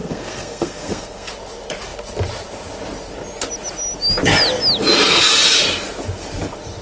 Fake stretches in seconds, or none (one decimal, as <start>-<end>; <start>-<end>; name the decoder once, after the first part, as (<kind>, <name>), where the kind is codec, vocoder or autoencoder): 0.0-1.3 (codec, SNAC)